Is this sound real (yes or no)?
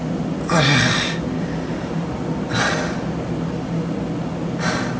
yes